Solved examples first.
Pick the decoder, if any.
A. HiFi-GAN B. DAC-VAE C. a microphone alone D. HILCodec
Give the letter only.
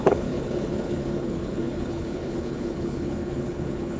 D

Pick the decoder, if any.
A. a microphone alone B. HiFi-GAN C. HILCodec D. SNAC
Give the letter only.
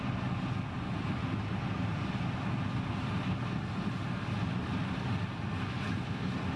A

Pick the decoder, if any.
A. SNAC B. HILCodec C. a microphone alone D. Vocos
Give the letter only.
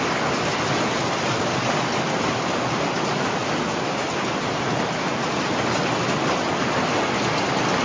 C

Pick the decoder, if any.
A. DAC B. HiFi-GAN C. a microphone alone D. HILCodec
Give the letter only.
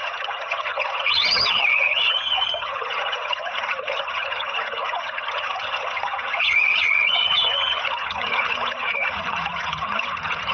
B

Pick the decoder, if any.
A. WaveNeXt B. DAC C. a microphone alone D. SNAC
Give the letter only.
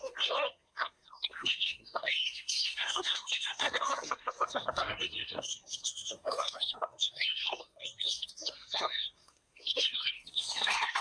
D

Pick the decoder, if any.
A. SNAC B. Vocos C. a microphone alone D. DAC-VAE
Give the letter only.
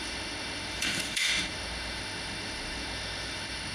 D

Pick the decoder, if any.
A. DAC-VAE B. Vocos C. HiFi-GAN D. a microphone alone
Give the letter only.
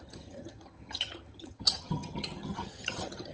C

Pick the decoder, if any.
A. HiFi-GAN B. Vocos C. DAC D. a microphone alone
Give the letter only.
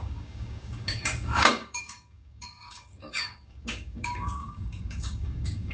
C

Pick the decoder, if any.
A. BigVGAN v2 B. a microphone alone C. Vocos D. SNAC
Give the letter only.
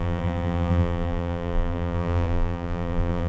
A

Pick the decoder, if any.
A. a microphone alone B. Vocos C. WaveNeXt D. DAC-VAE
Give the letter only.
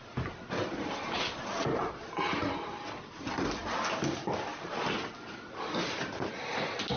A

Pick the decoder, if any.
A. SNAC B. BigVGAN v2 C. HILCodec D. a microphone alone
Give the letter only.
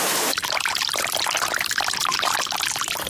B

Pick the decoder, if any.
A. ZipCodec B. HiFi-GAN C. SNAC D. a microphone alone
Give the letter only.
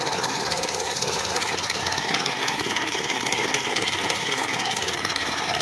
C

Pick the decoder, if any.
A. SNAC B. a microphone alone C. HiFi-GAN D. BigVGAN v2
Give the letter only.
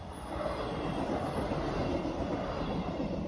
B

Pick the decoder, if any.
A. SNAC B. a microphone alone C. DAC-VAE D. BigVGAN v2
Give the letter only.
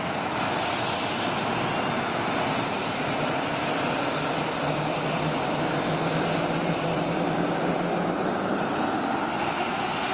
B